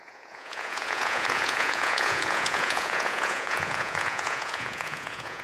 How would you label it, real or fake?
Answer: fake